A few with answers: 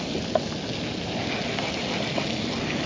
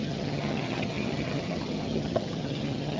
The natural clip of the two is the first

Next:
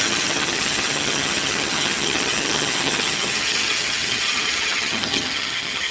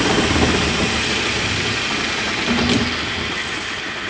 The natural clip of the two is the second